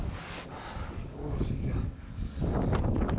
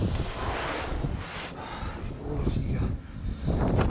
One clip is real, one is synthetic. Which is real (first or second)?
second